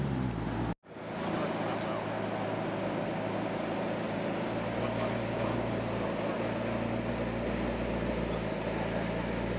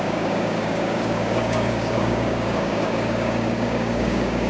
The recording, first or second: first